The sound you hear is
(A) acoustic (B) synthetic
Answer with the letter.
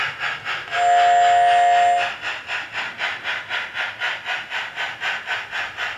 A